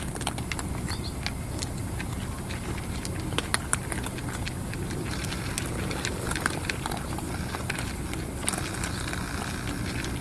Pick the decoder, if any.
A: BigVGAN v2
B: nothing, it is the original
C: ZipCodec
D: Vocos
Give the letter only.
B